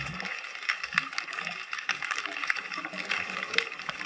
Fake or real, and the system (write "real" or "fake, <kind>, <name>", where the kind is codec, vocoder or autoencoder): fake, codec, DAC